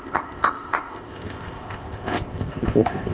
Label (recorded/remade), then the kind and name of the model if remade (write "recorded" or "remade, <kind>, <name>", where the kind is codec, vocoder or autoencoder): remade, codec, ZipCodec